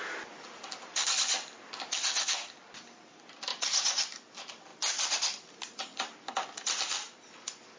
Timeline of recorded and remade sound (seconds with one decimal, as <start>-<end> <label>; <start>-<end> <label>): 0.0-7.8 recorded